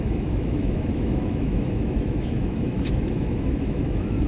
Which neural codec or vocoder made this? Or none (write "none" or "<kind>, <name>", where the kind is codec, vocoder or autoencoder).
autoencoder, DAC-VAE